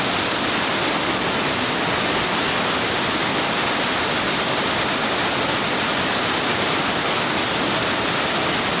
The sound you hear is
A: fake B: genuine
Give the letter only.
B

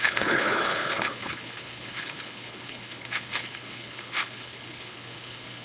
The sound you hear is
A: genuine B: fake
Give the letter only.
B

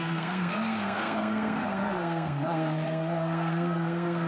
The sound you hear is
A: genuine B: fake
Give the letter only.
B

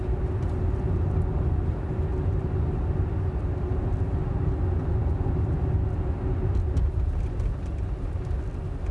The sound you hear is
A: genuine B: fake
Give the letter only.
A